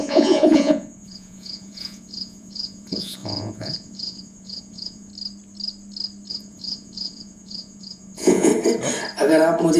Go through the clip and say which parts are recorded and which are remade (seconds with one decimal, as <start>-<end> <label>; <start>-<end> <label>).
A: 0.0-5.1 remade; 5.1-6.3 recorded; 6.3-8.5 remade; 8.5-9.8 recorded